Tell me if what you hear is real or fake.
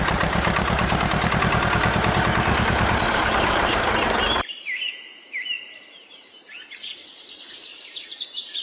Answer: fake